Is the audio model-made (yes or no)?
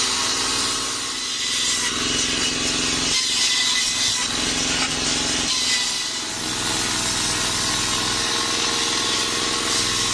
no